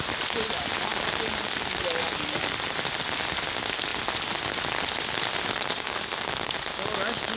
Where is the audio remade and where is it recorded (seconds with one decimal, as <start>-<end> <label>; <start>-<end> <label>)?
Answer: 0.0-7.4 recorded